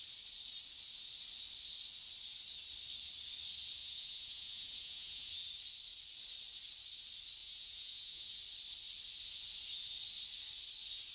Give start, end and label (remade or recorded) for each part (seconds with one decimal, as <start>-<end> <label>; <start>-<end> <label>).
0.0-3.8 recorded; 3.8-5.3 remade; 5.3-7.4 recorded; 7.4-8.4 remade; 8.4-11.1 recorded